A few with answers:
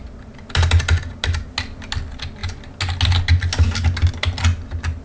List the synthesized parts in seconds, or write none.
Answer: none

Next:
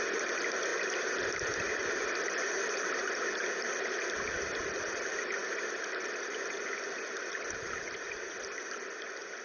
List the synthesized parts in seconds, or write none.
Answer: none

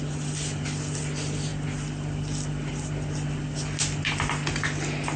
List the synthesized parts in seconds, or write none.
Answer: none

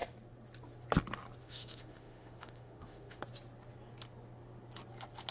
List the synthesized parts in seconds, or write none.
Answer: 1.4-3.2

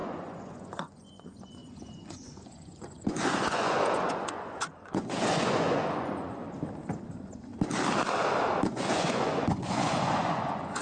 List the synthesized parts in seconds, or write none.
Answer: 0.0-6.4; 6.9-7.5; 8.7-10.8